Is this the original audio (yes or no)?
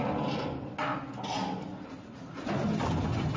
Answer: yes